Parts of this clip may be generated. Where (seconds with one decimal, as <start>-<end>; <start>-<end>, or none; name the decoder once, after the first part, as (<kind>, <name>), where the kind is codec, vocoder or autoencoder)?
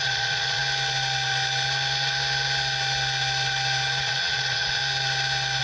0.0-0.6 (vocoder, Vocos); 4.0-4.8